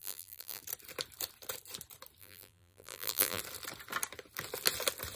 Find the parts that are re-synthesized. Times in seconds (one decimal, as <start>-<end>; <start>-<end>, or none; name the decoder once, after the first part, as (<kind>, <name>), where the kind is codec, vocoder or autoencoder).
0.0-0.6 (vocoder, BigVGAN v2); 2.2-3.4